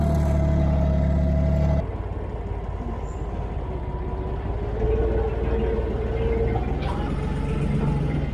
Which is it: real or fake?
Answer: real